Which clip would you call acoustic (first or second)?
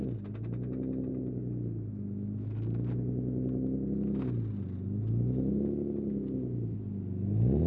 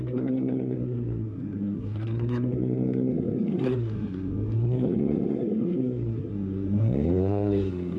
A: first